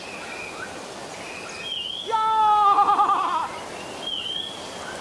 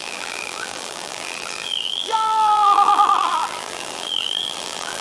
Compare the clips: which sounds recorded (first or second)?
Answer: first